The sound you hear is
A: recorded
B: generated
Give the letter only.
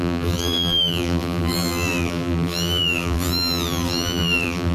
B